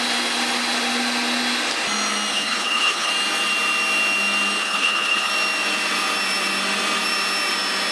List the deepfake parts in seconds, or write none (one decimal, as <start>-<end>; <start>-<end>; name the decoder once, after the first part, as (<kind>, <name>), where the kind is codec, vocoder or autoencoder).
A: 2.3-3.1 (codec, HILCodec); 4.6-5.3